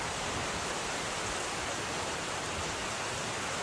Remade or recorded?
recorded